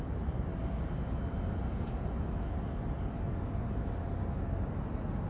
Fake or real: real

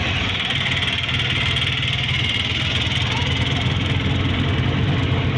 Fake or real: real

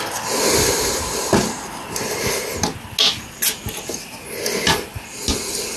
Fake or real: real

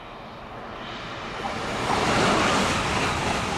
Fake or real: real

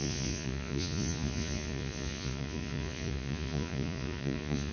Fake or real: fake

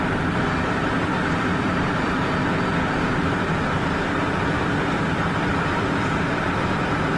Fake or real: fake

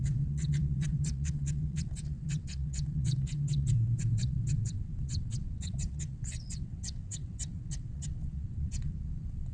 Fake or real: fake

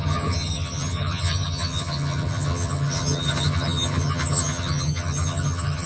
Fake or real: fake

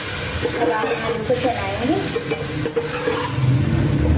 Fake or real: real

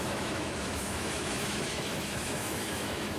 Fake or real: fake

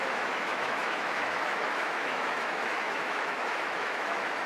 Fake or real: fake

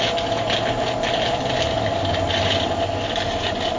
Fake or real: real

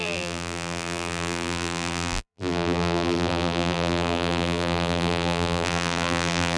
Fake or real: fake